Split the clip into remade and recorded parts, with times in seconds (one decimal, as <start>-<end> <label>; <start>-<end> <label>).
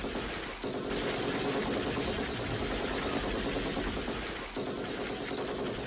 0.0-5.9 recorded